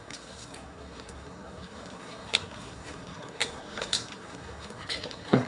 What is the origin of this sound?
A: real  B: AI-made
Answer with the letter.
B